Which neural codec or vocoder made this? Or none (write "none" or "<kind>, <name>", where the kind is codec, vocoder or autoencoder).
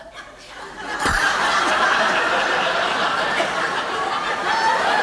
vocoder, BigVGAN v2